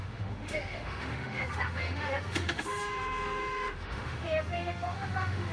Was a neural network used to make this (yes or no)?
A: yes